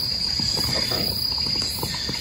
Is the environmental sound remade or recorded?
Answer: recorded